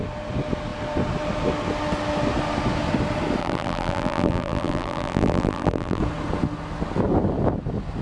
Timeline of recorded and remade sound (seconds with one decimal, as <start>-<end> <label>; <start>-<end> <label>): 0.0-3.4 recorded; 3.4-6.0 remade; 6.0-8.0 recorded

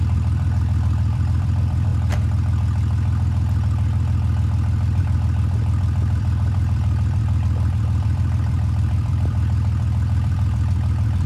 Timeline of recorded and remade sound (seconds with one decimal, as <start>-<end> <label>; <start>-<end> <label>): 0.0-1.9 remade; 1.9-5.0 recorded; 5.0-11.3 remade

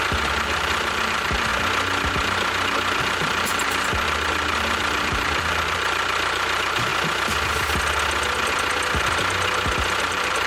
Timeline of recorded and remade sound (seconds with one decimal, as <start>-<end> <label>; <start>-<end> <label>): 0.0-1.5 remade; 1.5-3.0 recorded; 3.0-6.9 remade; 6.9-10.0 recorded; 10.0-10.5 remade

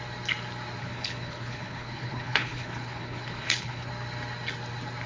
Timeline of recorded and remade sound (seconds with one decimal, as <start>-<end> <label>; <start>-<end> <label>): 0.0-0.8 recorded; 0.8-3.9 remade; 3.9-5.1 recorded

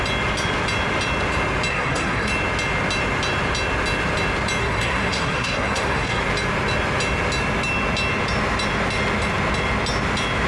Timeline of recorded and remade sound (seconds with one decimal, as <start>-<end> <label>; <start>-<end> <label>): 0.0-1.7 recorded; 1.7-2.3 remade; 2.3-4.6 recorded; 4.6-6.2 remade; 6.2-10.5 recorded

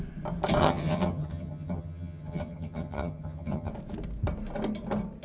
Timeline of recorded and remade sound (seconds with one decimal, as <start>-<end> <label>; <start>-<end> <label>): 0.0-0.6 recorded; 0.6-3.7 remade; 3.7-5.2 recorded

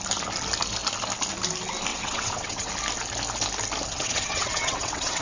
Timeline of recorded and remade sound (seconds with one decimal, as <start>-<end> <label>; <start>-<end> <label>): 0.0-1.9 recorded; 1.9-2.7 remade; 2.7-3.9 recorded; 3.9-5.2 remade